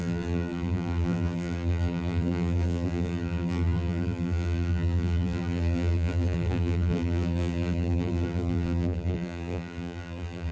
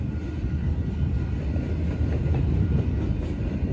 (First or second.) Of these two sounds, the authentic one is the second